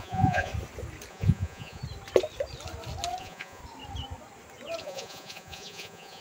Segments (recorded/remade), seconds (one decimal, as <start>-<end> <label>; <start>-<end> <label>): 0.0-0.5 remade; 0.5-1.1 recorded; 1.1-1.8 remade; 1.8-3.2 recorded; 3.2-3.6 remade; 3.6-4.8 recorded; 4.8-6.2 remade